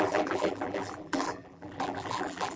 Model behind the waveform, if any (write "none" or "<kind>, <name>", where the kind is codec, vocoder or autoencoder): vocoder, BigVGAN v2